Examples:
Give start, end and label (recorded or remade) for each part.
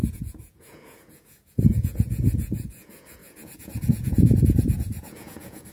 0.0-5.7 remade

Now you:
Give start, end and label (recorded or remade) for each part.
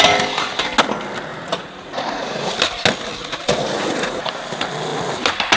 0.0-1.3 recorded; 1.3-2.5 remade; 2.5-3.2 recorded; 3.2-4.3 remade; 4.3-5.6 recorded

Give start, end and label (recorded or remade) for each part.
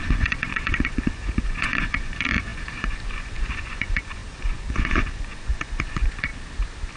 0.0-6.3 remade; 6.3-7.0 recorded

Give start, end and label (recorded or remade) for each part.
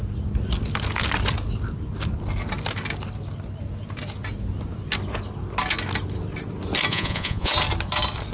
0.0-6.9 recorded; 6.9-7.5 remade; 7.5-8.3 recorded